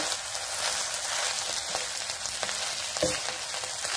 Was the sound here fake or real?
real